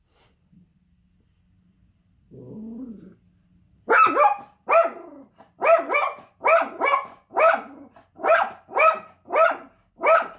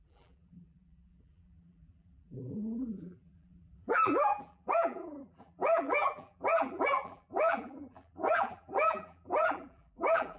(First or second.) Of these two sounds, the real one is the first